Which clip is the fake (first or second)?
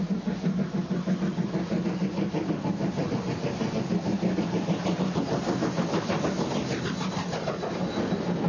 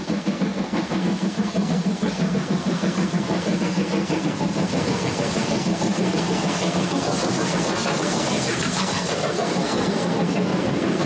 second